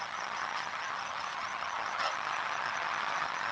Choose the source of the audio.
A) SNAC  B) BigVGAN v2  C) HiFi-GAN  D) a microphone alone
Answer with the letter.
C